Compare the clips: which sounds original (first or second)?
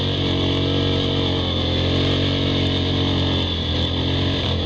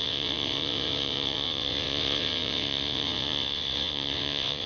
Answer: first